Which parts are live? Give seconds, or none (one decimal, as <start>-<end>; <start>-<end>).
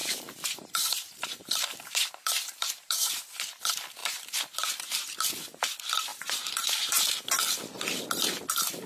3.1-4.0; 4.8-6.1; 7.3-8.9